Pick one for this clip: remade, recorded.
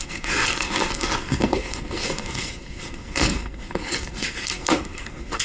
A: remade